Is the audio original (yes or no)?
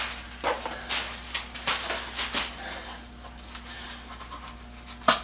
yes